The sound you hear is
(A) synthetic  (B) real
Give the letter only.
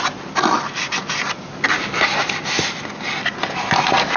B